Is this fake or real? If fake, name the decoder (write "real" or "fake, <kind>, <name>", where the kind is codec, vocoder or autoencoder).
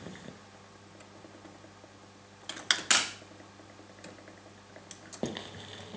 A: real